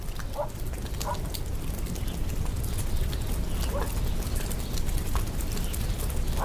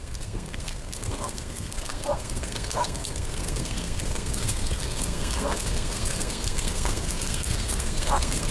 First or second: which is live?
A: first